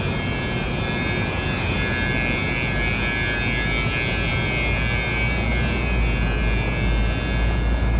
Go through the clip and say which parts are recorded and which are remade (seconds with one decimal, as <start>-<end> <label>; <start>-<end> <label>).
0.0-8.0 recorded